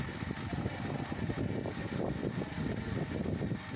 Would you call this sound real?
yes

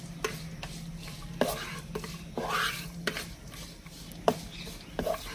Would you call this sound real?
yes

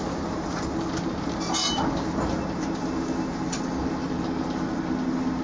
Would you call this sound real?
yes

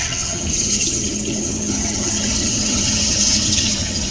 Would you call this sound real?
no